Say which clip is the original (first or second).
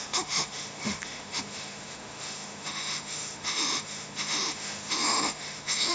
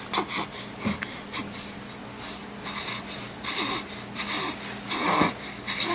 second